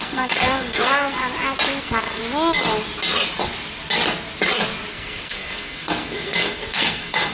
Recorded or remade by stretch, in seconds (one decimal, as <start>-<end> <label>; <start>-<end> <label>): 0.0-1.2 remade; 1.2-1.8 recorded; 1.8-2.2 remade; 2.2-4.9 recorded; 4.9-7.3 remade